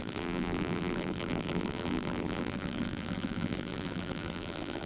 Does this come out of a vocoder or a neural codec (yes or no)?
yes